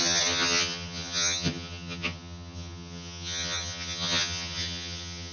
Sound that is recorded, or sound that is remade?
remade